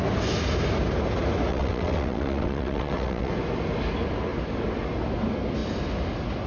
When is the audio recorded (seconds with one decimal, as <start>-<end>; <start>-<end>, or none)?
0.0-1.5; 3.3-6.5

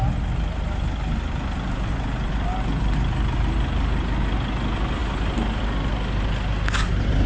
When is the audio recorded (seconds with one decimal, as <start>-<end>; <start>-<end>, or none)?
0.0-7.3

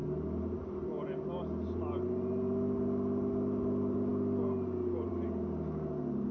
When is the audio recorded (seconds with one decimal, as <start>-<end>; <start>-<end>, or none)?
0.0-6.3